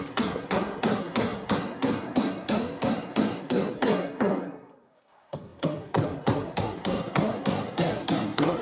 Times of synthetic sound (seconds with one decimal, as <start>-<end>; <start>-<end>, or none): 0.0-8.6